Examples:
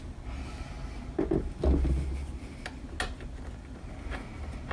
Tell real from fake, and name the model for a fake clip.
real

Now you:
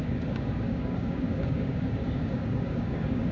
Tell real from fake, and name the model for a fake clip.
fake, codec, DAC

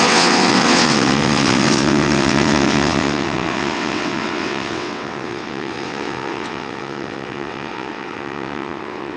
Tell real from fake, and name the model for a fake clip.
fake, vocoder, WaveNeXt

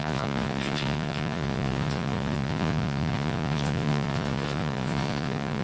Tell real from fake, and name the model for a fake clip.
fake, vocoder, Vocos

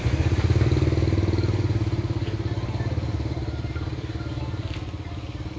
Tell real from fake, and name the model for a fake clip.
real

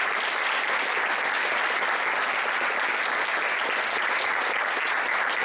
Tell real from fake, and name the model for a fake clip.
real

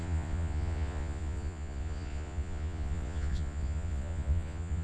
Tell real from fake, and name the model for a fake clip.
fake, vocoder, Vocos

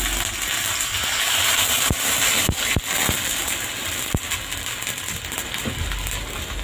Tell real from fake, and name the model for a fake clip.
real